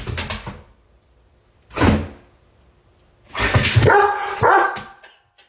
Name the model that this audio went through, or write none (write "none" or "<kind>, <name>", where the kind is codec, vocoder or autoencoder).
none